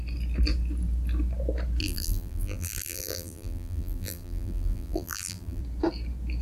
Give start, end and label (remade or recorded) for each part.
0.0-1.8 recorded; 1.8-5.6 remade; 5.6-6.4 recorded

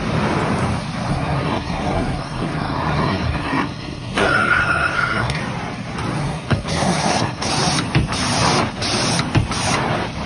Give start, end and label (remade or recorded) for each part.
0.0-1.1 recorded; 1.1-5.4 remade; 5.4-6.2 recorded; 6.2-7.5 remade; 7.5-10.3 recorded

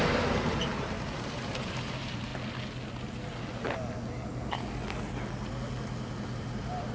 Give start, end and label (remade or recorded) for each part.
0.0-2.3 remade; 2.3-6.4 recorded; 6.4-6.9 remade

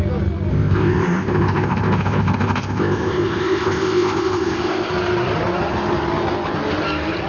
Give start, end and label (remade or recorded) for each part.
0.0-0.5 recorded; 0.5-4.9 remade; 4.9-7.3 recorded

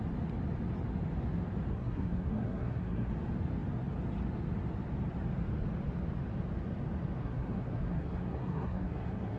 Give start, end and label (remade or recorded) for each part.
0.0-1.7 recorded; 1.7-3.1 remade; 3.1-7.2 recorded; 7.2-9.4 remade